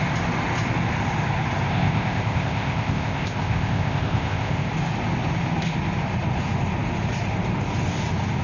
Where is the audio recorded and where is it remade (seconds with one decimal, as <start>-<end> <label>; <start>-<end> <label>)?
0.0-1.7 recorded; 1.7-4.7 remade; 4.7-8.4 recorded